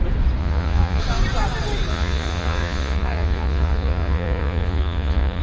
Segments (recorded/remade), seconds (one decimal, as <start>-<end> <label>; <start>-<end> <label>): 0.0-0.4 recorded; 0.4-1.0 remade; 1.0-1.9 recorded; 1.9-5.4 remade